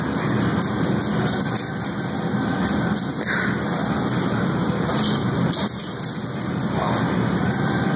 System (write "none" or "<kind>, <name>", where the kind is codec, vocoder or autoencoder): none